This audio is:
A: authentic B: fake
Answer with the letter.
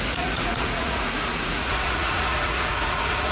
B